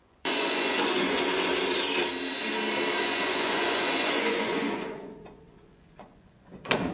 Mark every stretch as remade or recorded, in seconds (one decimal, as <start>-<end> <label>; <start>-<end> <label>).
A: 0.0-1.5 remade; 1.5-3.0 recorded; 3.0-6.9 remade